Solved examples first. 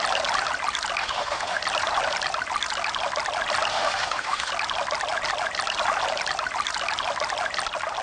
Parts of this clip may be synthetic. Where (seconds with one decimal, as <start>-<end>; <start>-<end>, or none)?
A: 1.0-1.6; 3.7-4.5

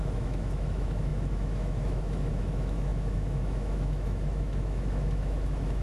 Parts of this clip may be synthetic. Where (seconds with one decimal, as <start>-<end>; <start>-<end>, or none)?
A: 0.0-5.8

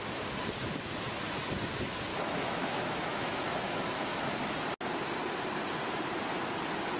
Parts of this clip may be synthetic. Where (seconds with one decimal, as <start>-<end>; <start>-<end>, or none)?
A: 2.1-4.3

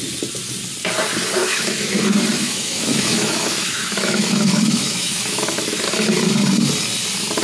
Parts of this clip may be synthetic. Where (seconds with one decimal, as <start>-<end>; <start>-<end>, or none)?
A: 1.4-2.0; 2.4-5.8

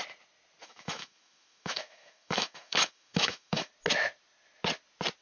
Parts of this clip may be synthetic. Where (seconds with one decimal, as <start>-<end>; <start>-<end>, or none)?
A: 0.6-3.7

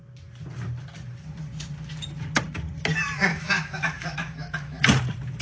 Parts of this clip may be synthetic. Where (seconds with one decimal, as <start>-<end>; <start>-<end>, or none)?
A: 3.3-4.8

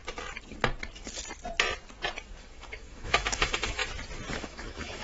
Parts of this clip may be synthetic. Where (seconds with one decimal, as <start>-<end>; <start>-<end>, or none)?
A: 2.4-3.8; 4.3-5.0

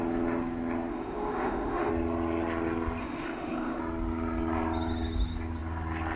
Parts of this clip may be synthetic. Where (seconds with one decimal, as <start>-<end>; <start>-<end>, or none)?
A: 0.9-1.9; 3.0-3.8